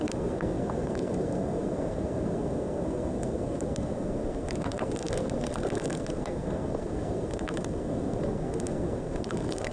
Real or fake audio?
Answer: fake